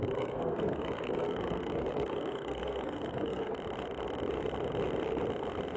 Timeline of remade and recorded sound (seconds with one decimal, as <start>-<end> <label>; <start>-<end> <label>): 0.0-3.5 remade; 3.5-5.8 recorded